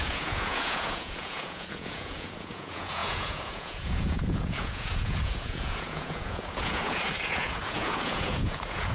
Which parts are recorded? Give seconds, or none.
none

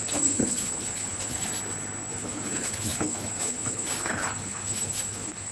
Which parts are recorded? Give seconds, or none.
1.5-2.1

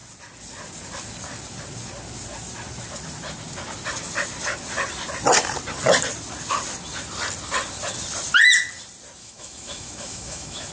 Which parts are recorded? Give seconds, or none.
0.0-9.2